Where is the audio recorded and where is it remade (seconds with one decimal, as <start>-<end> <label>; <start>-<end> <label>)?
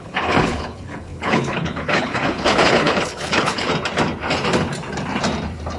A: 0.0-3.7 remade; 3.7-5.8 recorded